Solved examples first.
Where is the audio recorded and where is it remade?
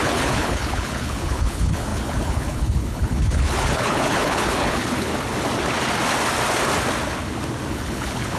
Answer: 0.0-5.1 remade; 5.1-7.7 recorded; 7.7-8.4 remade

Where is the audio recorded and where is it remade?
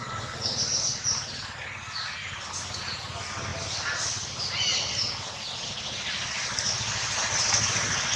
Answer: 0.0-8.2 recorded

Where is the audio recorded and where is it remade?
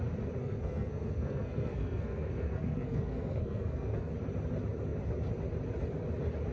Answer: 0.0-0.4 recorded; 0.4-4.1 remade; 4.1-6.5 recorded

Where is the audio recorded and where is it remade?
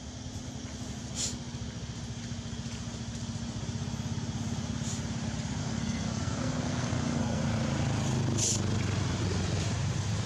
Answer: 0.0-5.6 recorded; 5.6-7.4 remade; 7.4-10.3 recorded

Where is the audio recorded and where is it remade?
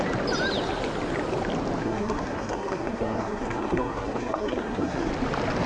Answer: 0.0-1.8 recorded; 1.8-5.1 remade; 5.1-5.7 recorded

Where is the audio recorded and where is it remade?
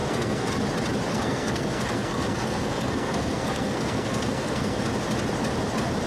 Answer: 0.0-0.5 remade; 0.5-1.1 recorded; 1.1-4.8 remade; 4.8-6.1 recorded